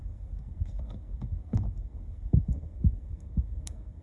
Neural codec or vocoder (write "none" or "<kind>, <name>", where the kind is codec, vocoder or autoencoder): codec, SNAC